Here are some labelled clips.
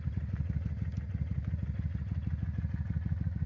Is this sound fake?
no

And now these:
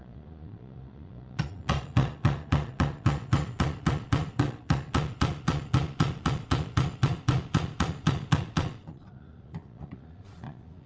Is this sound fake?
yes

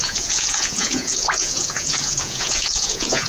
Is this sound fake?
yes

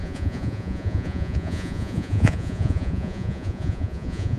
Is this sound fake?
yes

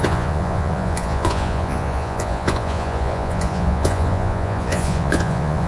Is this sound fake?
yes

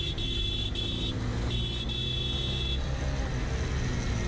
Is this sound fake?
no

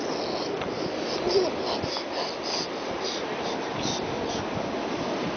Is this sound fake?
no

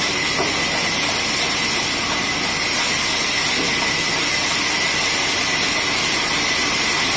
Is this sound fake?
no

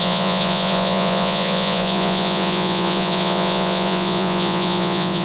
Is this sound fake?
yes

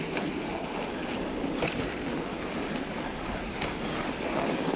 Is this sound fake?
no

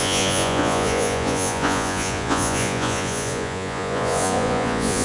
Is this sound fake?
yes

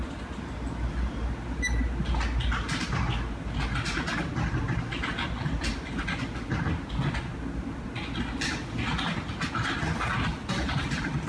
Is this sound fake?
no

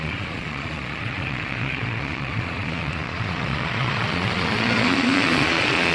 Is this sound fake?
yes